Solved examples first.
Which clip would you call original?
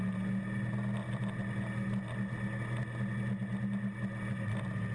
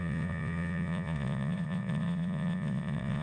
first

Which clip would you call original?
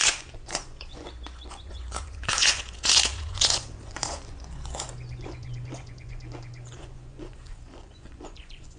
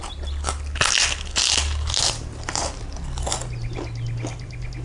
second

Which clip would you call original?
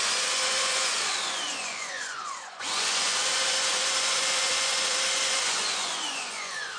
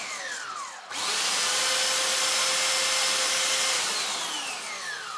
second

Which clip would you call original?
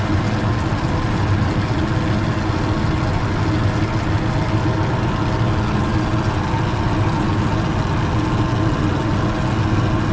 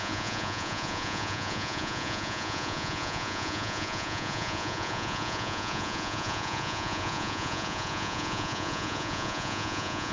first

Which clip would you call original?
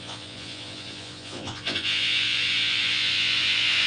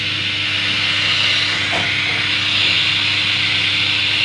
second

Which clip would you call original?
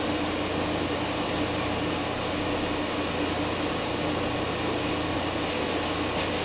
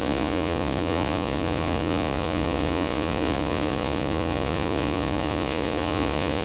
first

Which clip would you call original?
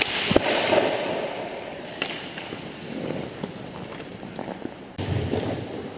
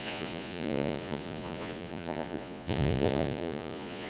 first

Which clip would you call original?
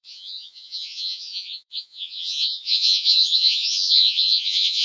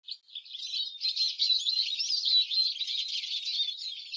second